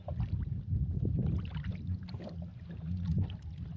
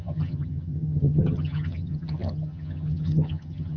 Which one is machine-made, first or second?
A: second